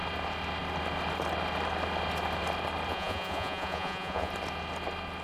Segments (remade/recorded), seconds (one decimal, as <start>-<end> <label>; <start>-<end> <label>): 0.0-2.9 recorded; 2.9-4.3 remade; 4.3-5.2 recorded